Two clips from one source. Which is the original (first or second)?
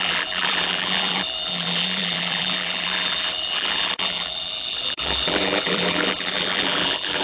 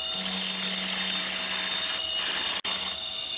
second